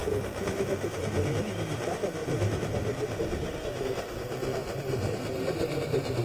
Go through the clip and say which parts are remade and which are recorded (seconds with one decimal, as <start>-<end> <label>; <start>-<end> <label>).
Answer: 0.0-2.2 recorded; 2.2-3.6 remade; 3.6-4.6 recorded; 4.6-6.2 remade